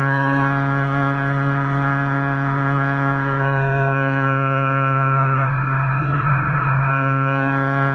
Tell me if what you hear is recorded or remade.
remade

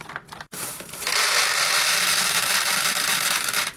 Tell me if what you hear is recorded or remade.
recorded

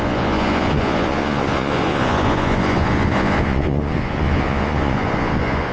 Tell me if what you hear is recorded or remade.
remade